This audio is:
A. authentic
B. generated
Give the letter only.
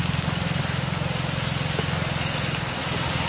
A